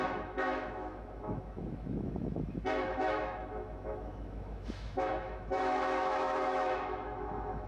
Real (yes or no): no